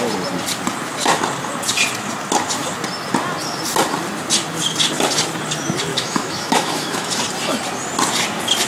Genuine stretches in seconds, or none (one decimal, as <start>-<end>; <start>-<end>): 0.0-5.9; 7.2-8.7